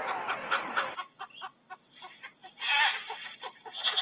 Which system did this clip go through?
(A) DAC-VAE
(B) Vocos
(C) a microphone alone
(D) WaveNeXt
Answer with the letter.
C